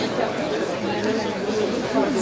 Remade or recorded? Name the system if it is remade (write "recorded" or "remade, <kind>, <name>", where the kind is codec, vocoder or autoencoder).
recorded